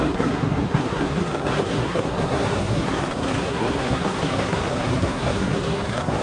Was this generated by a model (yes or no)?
yes